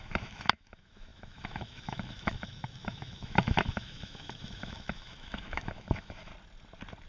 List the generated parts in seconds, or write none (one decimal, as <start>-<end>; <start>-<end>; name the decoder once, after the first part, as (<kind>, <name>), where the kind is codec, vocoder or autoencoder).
0.0-6.3 (autoencoder, DAC-VAE)